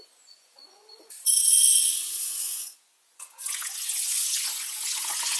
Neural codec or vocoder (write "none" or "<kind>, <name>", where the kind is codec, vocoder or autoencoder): vocoder, Vocos